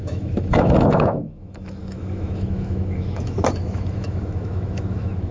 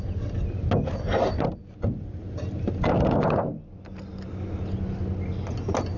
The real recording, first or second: second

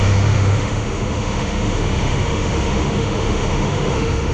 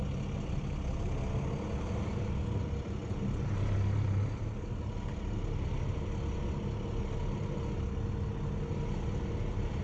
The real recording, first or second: second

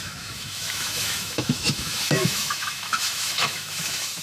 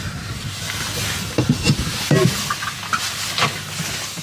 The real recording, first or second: second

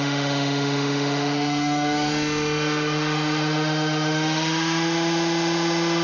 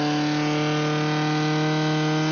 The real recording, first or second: second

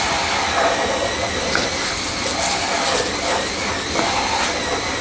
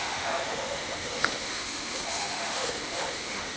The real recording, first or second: first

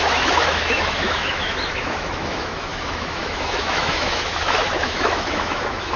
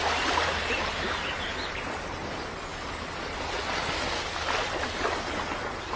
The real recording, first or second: second